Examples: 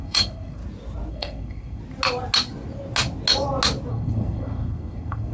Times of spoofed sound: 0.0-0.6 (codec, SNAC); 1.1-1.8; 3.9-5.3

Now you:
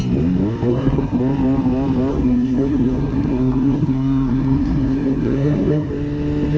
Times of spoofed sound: 0.7-1.2 (codec, SNAC); 2.1-5.9

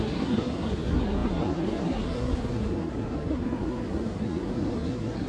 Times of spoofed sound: 0.0-5.3 (codec, SNAC)

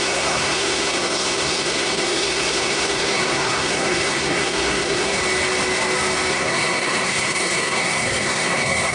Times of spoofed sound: 0.0-5.2 (codec, SNAC); 6.3-8.9

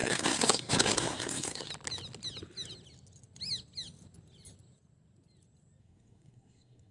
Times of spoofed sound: 0.0-1.7 (codec, SNAC); 5.8-6.9

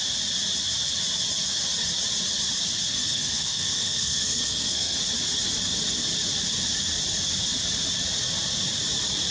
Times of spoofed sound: 2.9-5.0 (codec, SNAC)

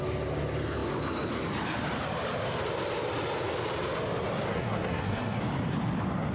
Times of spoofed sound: 4.5-5.4 (codec, SNAC)